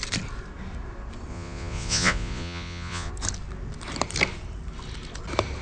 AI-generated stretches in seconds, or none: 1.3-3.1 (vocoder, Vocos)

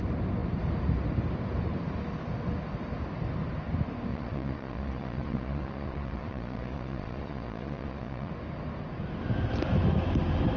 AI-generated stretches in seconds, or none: 4.1-8.3 (vocoder, Vocos)

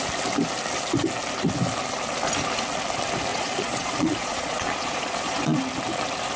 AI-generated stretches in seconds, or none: 3.3-5.6 (vocoder, Vocos)

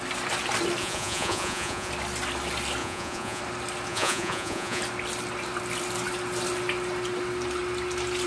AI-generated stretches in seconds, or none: 0.8-1.9 (vocoder, Vocos); 2.8-3.4; 3.9-4.8

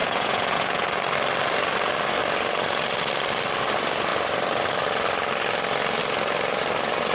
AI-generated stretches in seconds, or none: 0.0-1.0 (vocoder, Vocos)

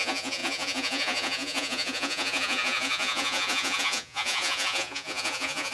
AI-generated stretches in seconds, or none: 0.0-5.7 (vocoder, Vocos)

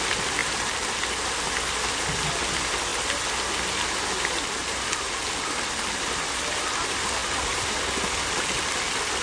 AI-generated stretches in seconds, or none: none

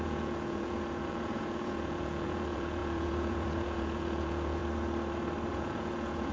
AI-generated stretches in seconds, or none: 0.0-4.6 (vocoder, Vocos); 5.5-6.3